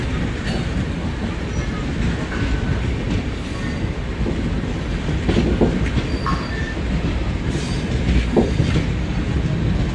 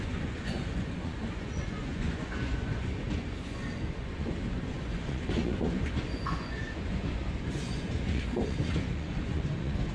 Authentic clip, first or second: first